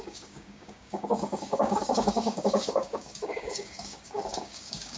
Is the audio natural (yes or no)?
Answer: no